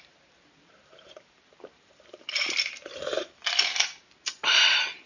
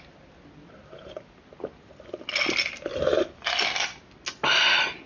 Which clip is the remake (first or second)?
first